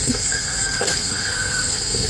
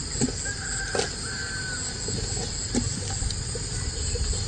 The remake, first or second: first